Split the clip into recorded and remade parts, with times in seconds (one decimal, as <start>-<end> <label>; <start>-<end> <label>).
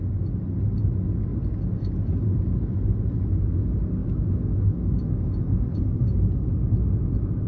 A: 0.0-4.0 recorded; 4.0-5.6 remade; 5.6-7.5 recorded